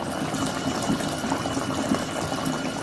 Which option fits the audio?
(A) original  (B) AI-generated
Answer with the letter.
A